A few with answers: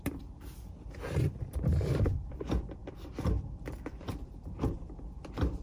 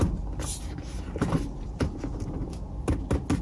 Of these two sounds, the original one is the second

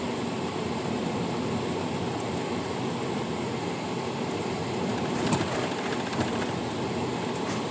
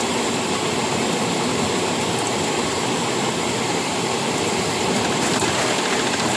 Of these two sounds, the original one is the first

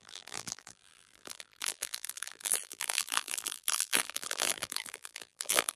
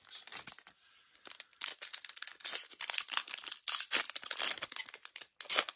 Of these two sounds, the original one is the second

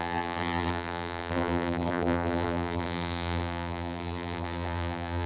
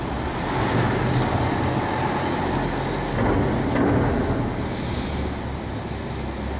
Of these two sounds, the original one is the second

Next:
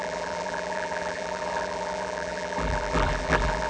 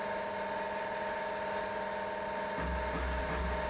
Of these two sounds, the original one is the second